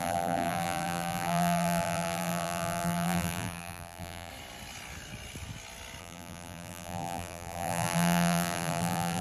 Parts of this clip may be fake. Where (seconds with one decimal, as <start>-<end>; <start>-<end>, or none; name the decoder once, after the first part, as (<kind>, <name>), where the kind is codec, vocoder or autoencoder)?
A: 0.0-4.3 (vocoder, BigVGAN v2); 6.0-9.2